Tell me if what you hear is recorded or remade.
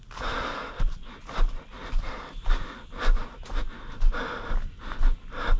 recorded